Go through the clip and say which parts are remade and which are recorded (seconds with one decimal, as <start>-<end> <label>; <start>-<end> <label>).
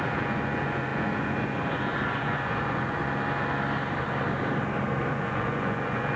0.0-3.0 remade; 3.0-5.1 recorded; 5.1-6.2 remade